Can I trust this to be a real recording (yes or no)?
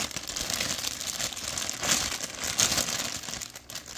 yes